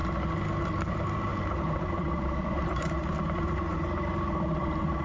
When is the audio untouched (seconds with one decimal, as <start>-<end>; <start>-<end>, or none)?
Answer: 0.0-0.9